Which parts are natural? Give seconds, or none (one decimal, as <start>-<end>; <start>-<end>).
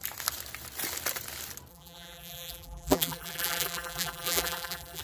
0.0-1.7